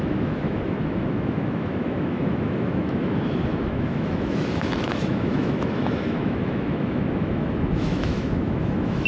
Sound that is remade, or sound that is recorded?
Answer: remade